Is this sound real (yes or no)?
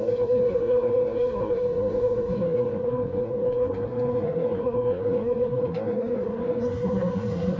no